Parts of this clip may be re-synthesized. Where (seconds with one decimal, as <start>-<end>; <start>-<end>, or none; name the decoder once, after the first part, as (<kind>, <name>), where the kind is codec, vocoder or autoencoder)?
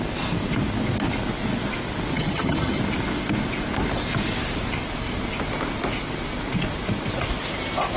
2.1-2.8 (vocoder, HiFi-GAN)